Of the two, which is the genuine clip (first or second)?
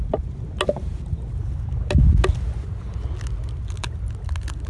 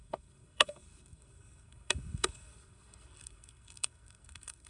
first